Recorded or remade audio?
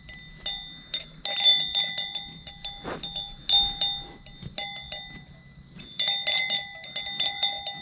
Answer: recorded